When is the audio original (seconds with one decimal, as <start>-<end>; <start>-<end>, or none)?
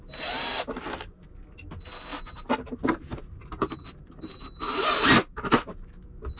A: 0.0-2.1; 5.9-6.4